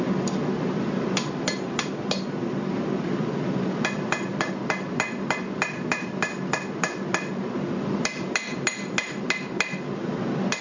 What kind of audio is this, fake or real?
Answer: real